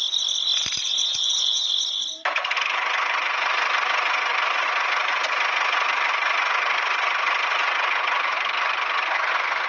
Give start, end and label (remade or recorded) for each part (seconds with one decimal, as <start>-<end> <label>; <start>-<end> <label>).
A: 0.0-1.1 recorded; 1.1-1.7 remade; 1.7-9.7 recorded